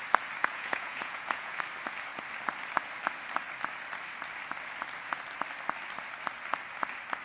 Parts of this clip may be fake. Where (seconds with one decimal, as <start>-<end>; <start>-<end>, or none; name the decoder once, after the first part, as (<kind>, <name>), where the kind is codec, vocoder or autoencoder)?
0.4-1.6 (vocoder, Vocos)